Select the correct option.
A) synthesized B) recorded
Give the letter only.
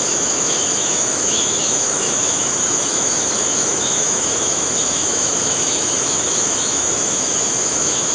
A